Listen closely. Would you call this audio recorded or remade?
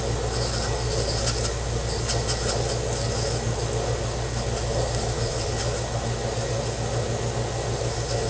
recorded